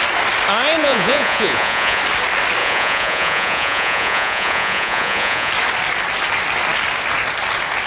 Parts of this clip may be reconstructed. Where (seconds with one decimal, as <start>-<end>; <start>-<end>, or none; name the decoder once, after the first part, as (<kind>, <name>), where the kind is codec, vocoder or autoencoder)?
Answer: 0.8-2.0 (vocoder, Vocos); 2.6-5.5